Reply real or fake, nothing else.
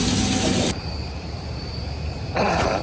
fake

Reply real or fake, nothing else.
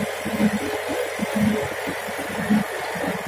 real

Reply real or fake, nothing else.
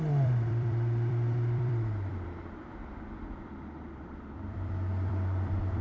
fake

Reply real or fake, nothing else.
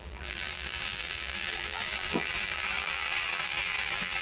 fake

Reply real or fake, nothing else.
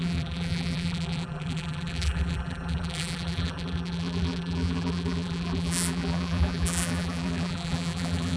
fake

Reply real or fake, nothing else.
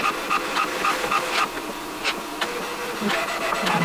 real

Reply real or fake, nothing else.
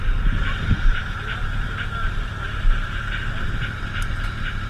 fake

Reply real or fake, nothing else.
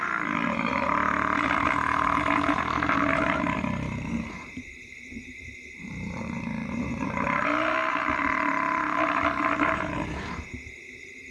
fake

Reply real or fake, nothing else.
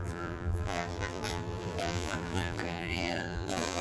fake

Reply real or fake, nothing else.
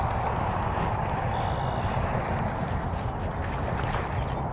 real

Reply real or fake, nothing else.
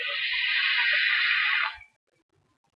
real